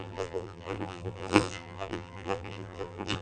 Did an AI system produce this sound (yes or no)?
yes